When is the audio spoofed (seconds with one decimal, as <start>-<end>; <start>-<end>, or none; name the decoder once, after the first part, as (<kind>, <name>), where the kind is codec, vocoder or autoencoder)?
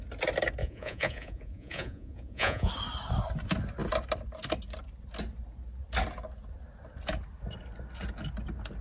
0.6-2.7 (vocoder, Vocos)